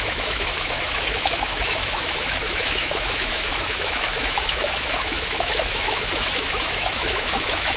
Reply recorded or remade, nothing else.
remade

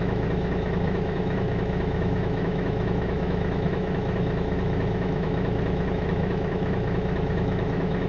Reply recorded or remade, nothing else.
remade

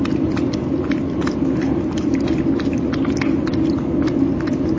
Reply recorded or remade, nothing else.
recorded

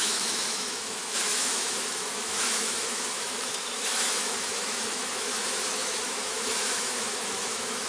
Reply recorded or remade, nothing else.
remade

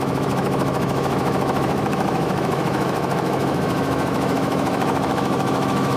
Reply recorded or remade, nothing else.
remade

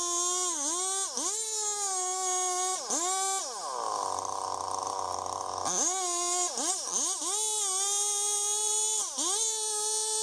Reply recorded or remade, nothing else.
recorded